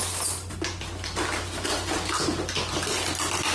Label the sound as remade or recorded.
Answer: recorded